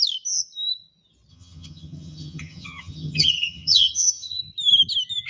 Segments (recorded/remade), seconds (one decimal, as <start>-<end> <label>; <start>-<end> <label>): 0.0-1.3 recorded; 1.3-4.4 remade; 4.4-5.3 recorded